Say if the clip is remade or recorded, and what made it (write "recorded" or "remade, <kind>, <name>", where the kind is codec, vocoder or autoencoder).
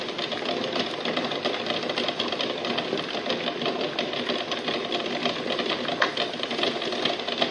recorded